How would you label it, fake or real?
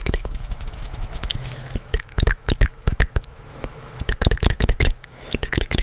fake